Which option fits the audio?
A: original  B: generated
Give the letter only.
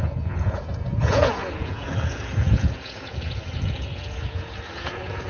B